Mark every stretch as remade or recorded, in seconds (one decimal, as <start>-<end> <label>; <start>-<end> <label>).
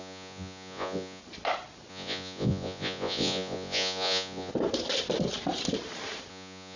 0.0-1.2 remade; 1.2-1.9 recorded; 1.9-4.5 remade; 4.5-6.3 recorded; 6.3-6.8 remade